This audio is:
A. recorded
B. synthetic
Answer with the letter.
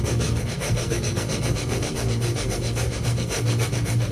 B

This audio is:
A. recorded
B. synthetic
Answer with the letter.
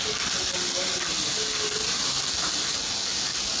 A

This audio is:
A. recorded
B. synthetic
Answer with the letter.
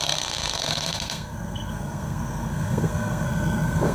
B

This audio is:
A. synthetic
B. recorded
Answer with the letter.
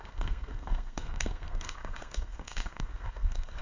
A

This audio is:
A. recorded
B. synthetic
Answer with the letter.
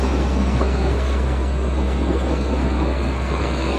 B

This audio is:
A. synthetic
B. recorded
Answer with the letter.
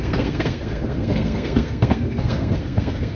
A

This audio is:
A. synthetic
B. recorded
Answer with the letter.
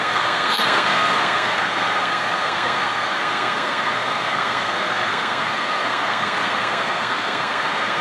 A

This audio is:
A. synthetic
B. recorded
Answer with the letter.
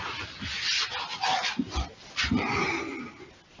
B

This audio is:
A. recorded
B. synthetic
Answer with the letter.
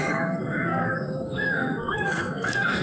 B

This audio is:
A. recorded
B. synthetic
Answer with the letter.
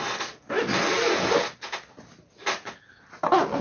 A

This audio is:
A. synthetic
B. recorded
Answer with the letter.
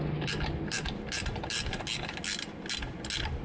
B